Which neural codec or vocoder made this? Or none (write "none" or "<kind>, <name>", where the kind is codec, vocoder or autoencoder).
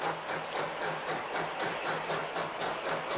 vocoder, BigVGAN v2